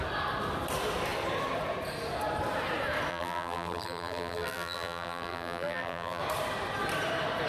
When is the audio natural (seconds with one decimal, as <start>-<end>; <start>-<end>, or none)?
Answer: 0.0-3.1; 6.2-7.5